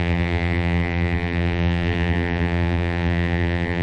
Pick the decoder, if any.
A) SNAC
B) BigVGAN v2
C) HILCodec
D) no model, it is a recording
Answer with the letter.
B